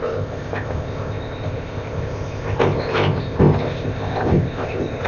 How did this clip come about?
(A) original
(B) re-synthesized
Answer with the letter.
B